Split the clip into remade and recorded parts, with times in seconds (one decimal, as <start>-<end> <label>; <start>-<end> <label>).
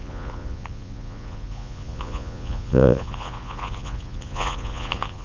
0.0-5.2 remade